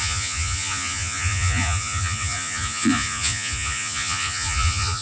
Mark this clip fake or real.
fake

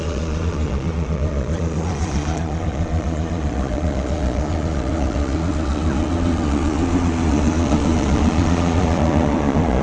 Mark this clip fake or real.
fake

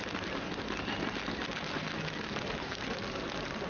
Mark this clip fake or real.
fake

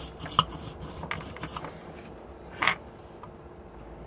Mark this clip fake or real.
real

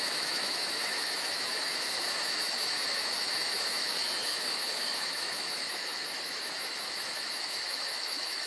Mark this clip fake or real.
fake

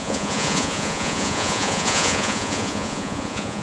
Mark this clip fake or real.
fake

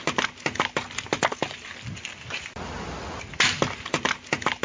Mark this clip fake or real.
real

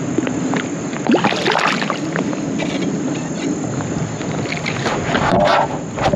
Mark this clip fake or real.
real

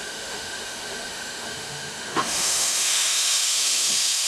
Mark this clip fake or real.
fake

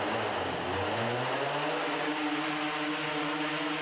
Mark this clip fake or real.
real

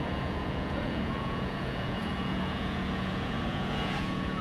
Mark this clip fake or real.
fake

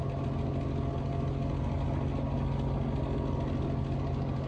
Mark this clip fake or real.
real